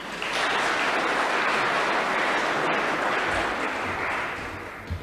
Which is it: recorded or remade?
recorded